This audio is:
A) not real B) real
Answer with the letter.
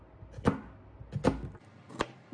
B